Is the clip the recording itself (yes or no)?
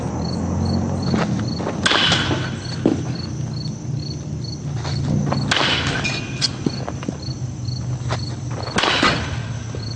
yes